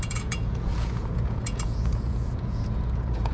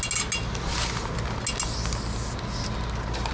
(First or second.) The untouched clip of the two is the second